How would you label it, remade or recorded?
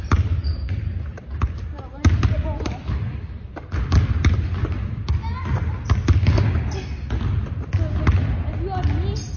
recorded